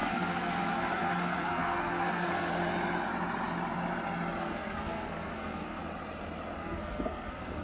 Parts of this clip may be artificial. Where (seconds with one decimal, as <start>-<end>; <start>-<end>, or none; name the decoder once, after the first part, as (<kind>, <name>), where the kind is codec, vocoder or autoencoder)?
0.0-2.5 (codec, SNAC); 4.4-5.8; 6.6-7.6